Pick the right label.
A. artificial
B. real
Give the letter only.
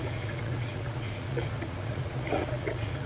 A